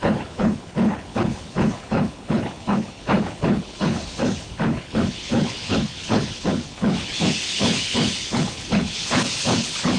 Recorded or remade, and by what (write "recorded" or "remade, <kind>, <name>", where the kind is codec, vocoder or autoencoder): remade, codec, HILCodec